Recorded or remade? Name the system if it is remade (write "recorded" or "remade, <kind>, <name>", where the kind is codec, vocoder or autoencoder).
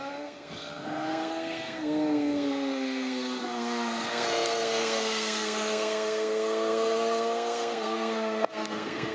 remade, codec, SNAC